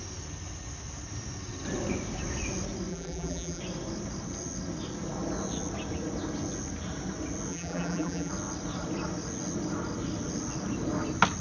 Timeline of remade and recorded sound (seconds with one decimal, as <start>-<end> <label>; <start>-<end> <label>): 0.0-2.9 recorded; 2.9-3.6 remade; 3.6-7.5 recorded; 7.5-8.3 remade; 8.3-11.4 recorded